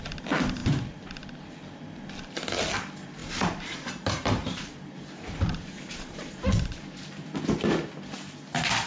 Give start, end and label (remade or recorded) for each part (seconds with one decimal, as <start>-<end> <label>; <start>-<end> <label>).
0.0-3.2 recorded; 3.2-7.0 remade; 7.0-8.9 recorded